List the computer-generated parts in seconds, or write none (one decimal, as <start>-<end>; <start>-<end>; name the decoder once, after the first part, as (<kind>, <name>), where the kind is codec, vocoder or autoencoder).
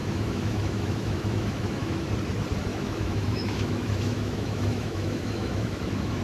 0.0-2.1 (autoencoder, DAC-VAE); 2.7-6.2